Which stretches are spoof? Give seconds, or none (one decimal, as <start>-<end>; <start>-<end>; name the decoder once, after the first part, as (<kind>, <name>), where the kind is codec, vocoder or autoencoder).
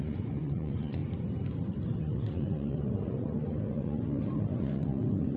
0.0-1.0 (vocoder, Vocos); 2.0-5.4